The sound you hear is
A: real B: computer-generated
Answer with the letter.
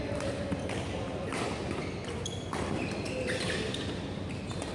A